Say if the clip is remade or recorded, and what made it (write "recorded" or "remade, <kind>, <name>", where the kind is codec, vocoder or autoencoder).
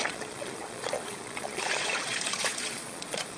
remade, vocoder, Vocos